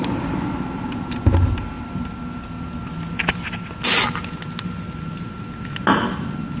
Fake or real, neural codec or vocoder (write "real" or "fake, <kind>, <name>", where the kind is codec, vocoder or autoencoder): real